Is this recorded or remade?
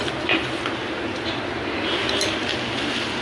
recorded